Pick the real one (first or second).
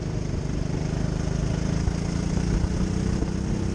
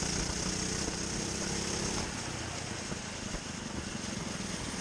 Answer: first